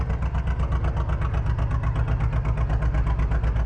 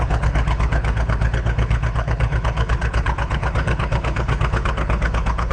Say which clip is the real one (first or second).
first